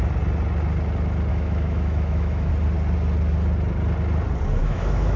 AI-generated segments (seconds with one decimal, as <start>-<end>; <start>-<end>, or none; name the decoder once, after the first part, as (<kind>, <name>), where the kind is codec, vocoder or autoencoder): 1.3-2.5 (autoencoder, DAC-VAE); 4.6-5.2